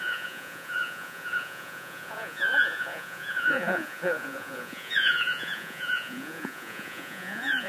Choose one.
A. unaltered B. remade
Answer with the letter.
B